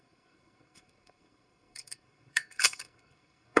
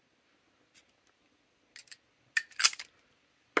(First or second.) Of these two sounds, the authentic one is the second